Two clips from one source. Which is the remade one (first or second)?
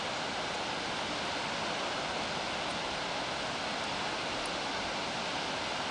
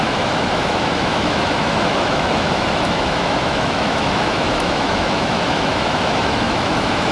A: second